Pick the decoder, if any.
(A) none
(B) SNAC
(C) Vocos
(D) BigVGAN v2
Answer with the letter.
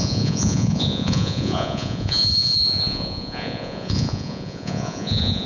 C